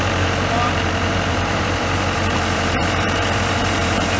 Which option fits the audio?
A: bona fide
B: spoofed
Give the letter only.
B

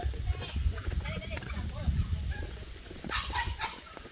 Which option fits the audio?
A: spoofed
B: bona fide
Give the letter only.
A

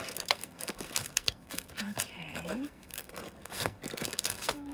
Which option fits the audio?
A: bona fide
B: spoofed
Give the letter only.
B